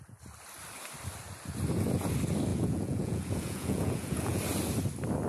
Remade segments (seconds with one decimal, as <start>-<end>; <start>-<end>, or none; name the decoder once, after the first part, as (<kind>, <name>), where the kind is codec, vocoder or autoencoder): 2.5-4.4 (vocoder, Vocos)